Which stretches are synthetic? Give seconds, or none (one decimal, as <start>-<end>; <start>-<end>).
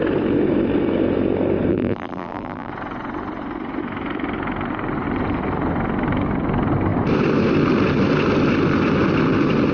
1.7-2.7